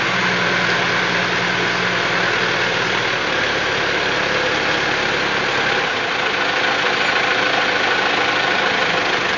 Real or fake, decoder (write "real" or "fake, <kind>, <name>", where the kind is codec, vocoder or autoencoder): real